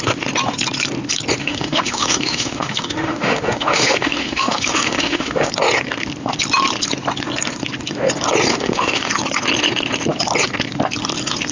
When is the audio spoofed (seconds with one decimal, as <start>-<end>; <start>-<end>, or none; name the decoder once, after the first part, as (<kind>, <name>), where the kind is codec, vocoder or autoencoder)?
1.4-5.5 (autoencoder, DAC-VAE); 8.5-9.1

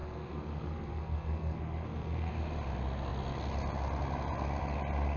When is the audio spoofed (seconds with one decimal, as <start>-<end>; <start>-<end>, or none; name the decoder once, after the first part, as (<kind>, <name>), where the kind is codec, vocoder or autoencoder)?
0.0-2.3 (codec, SNAC)